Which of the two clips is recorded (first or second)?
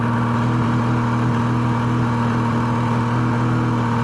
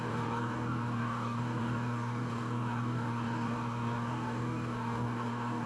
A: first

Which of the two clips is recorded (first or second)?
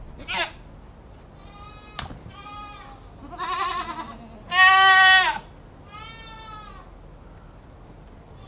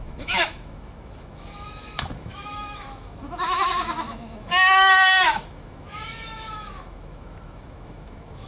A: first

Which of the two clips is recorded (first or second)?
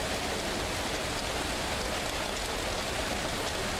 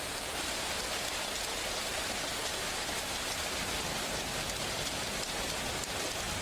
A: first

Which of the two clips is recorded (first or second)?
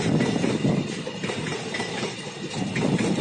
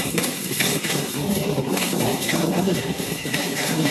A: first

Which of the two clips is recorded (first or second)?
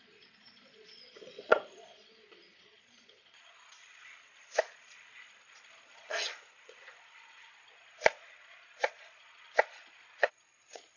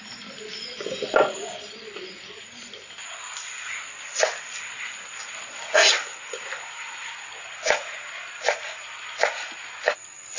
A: second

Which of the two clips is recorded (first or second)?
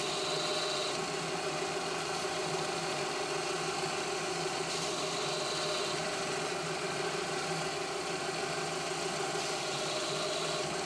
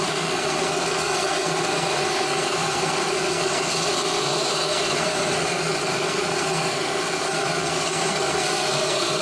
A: first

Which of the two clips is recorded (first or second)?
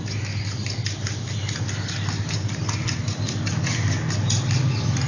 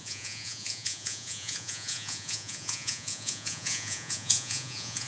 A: first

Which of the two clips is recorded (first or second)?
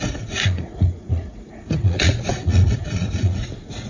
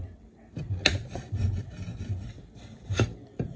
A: second